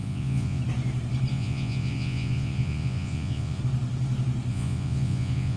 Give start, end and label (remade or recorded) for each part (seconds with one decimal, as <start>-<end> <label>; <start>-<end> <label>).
0.0-0.6 remade; 0.6-1.3 recorded; 1.3-3.6 remade; 3.6-4.5 recorded; 4.5-5.6 remade